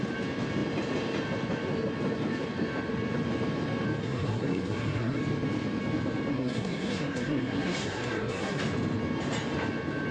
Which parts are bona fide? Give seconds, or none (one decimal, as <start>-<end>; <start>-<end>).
0.0-4.0; 5.2-6.3; 8.6-10.1